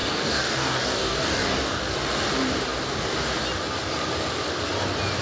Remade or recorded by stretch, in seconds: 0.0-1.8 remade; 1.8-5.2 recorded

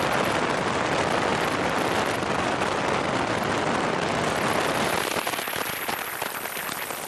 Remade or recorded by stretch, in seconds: 0.0-7.1 recorded

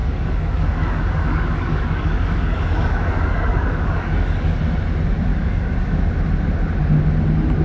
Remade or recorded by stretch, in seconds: 0.0-4.6 remade; 4.6-5.3 recorded; 5.3-6.0 remade; 6.0-7.6 recorded

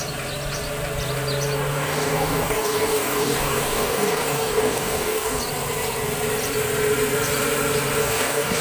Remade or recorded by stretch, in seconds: 0.0-1.7 recorded; 1.7-5.4 remade; 5.4-8.0 recorded; 8.0-8.6 remade